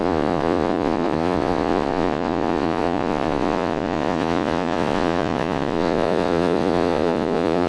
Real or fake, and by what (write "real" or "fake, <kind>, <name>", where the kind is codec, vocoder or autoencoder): fake, vocoder, Vocos